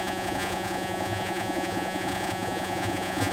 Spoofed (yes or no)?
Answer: yes